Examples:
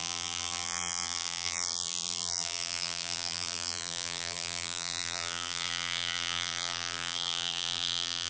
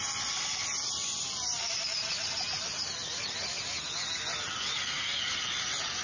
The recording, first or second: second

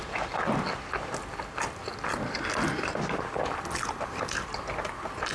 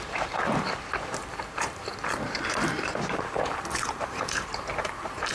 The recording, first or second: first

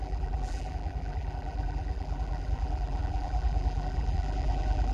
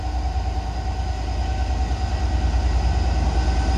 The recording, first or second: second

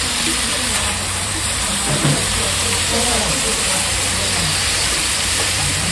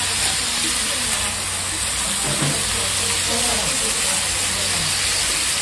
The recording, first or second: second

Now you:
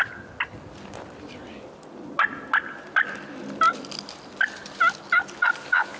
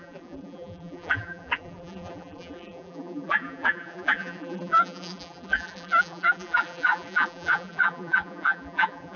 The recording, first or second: first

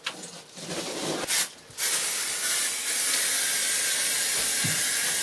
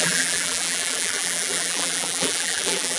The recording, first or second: first